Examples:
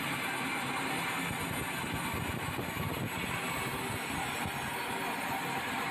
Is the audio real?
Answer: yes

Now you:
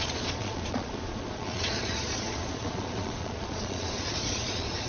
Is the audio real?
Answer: no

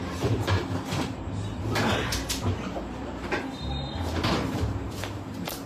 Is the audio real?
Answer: no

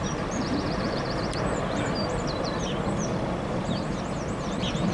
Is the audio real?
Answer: no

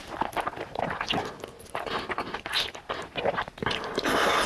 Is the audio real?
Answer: yes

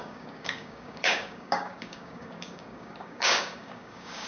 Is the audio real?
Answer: no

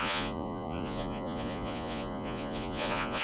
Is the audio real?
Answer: no